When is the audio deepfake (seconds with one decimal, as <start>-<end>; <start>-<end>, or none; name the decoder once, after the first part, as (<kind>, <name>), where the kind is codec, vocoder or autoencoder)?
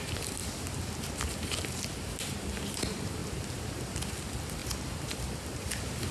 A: 3.2-4.0 (vocoder, BigVGAN v2); 4.6-5.1